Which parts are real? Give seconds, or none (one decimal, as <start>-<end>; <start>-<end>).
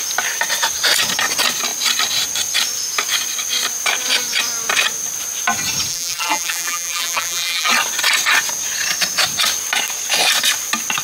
0.0-5.9; 7.7-11.0